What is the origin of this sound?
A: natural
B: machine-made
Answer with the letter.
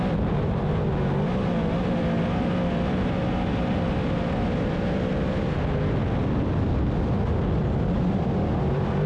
A